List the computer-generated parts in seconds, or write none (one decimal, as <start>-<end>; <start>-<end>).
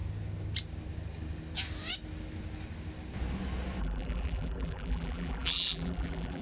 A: 3.8-6.4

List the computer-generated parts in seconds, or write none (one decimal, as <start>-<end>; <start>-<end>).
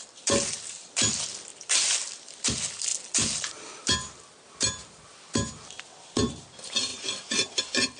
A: none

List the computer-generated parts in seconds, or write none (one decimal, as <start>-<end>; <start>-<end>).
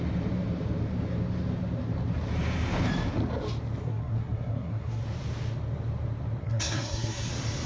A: 3.8-5.0; 6.4-7.3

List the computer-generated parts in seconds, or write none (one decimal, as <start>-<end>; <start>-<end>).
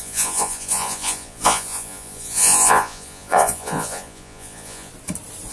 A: 0.0-4.9